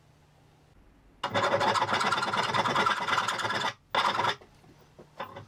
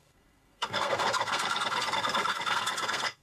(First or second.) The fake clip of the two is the second